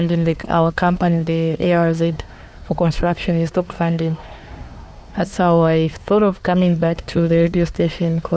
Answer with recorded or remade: remade